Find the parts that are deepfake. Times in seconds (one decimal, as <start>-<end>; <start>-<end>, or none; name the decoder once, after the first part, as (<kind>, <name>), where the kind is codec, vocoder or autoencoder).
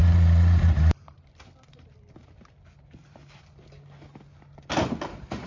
0.0-1.9 (vocoder, BigVGAN v2)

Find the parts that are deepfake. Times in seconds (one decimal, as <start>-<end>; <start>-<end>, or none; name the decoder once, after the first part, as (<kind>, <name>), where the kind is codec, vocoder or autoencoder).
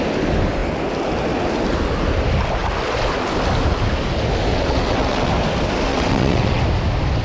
4.5-5.3 (vocoder, WaveNeXt); 5.9-6.6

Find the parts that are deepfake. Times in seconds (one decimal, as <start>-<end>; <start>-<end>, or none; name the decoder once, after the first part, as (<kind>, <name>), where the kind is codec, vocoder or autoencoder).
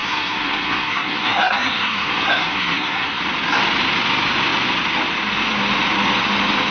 0.0-3.2 (codec, SNAC)